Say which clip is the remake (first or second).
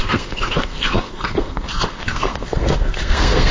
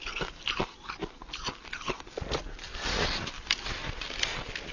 first